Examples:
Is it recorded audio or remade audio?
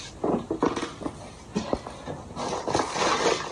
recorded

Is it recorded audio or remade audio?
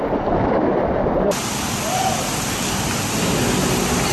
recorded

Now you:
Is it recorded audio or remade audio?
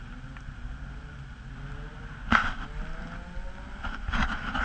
recorded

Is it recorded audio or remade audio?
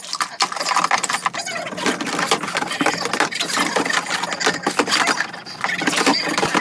recorded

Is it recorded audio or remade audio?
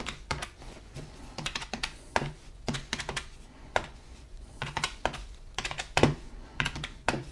remade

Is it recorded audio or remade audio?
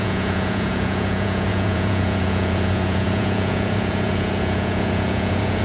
remade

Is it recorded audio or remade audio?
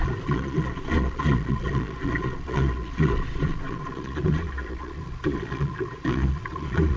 remade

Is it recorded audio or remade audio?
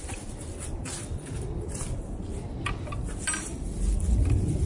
recorded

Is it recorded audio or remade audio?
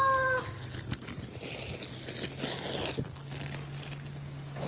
recorded